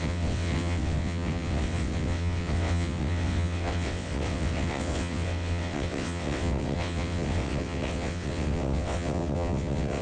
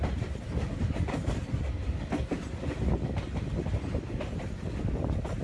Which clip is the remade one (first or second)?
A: first